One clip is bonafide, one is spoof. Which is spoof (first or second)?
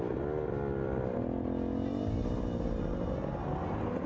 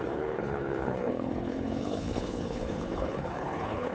second